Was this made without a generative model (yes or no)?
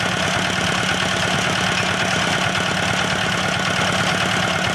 yes